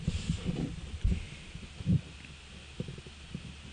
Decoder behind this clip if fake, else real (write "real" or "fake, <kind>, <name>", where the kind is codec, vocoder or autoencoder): real